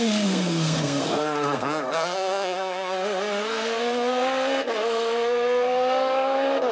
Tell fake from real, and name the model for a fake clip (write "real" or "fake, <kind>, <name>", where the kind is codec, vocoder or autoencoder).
fake, codec, SNAC